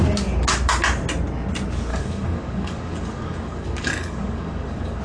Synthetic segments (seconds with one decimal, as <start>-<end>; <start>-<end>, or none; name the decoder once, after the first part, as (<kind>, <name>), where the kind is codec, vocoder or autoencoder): 1.9-5.0 (codec, DAC)